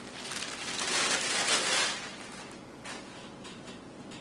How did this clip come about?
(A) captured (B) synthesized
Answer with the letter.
A